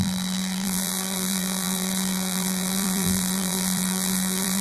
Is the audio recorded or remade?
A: remade